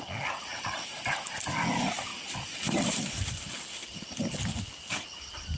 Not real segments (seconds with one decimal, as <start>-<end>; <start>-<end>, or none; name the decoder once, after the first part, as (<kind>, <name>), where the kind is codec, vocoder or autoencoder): none

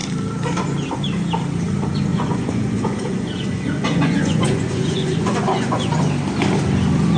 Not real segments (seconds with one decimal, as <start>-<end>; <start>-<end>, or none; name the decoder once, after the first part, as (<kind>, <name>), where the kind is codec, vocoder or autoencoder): 2.1-6.0 (vocoder, Vocos)

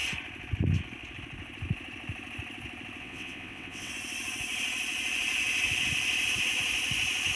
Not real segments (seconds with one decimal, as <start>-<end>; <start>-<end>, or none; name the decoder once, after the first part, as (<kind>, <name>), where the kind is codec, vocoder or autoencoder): 3.0-3.9 (vocoder, WaveNeXt)

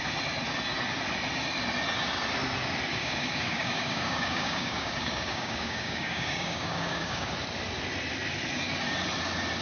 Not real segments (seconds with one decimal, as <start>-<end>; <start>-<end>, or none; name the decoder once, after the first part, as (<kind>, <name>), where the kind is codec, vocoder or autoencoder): 2.9-7.3 (codec, DAC)

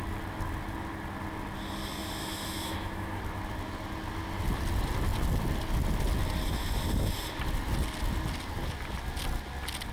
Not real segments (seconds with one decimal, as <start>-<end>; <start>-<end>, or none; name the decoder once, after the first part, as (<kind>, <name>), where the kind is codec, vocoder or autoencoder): 2.2-3.2 (autoencoder, DAC-VAE)

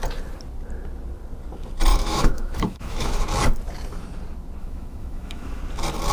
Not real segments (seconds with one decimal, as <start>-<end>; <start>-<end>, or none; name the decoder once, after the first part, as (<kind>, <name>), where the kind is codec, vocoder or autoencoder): 1.9-3.2 (autoencoder, DAC-VAE); 4.6-5.6

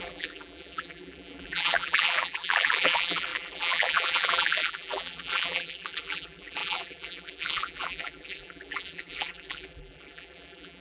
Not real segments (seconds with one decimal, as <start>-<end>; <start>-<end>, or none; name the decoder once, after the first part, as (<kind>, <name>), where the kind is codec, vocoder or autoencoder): 0.0-10.8 (vocoder, BigVGAN v2)